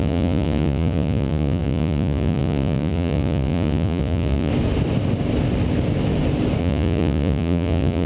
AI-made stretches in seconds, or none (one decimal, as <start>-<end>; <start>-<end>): 0.0-4.5; 6.6-8.1